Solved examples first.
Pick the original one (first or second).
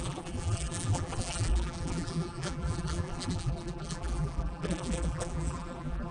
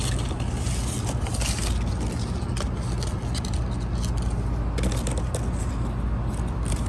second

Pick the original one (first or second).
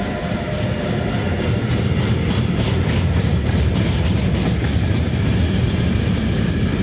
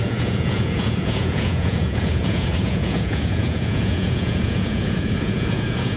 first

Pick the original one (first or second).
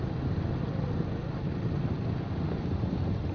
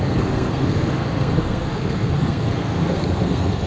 first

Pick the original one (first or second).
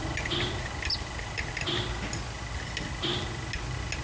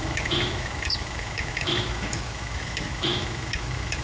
first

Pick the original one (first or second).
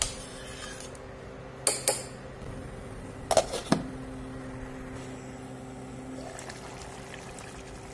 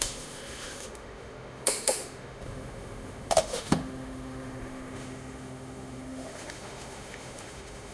first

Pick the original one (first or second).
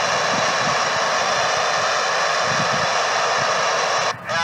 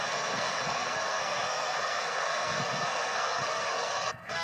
first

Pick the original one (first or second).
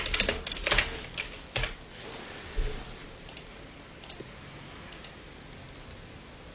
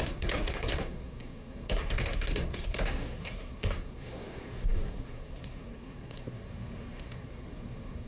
first